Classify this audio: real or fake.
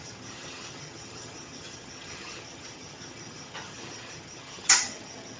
fake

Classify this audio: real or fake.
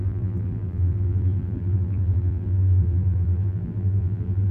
fake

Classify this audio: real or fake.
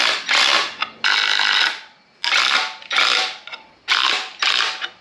real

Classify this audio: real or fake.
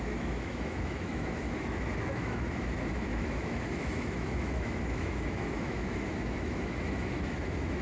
fake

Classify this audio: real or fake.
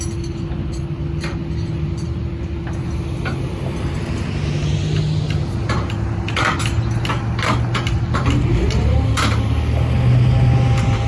real